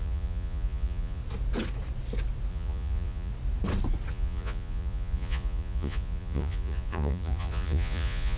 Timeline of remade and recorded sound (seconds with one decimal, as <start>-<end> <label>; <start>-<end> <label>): 0.0-1.2 remade; 1.2-2.5 recorded; 2.5-3.3 remade; 3.3-4.1 recorded; 4.1-8.4 remade